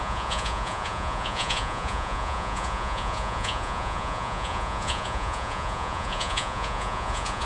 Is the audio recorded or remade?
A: remade